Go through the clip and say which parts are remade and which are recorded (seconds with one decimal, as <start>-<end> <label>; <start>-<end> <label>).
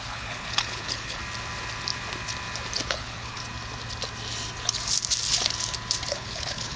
0.0-1.2 remade; 1.2-2.9 recorded; 2.9-3.4 remade; 3.4-6.1 recorded; 6.1-6.8 remade